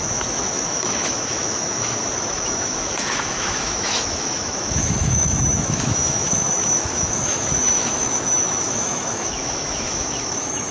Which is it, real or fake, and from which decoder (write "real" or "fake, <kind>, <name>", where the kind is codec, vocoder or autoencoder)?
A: fake, autoencoder, DAC-VAE